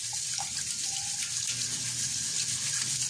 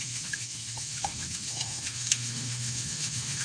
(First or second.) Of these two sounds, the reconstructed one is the second